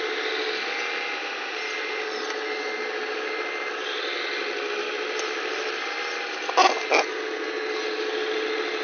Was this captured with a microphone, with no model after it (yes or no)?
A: yes